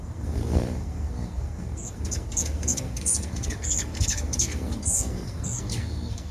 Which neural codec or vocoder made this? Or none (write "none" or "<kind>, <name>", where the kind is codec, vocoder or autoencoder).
codec, SNAC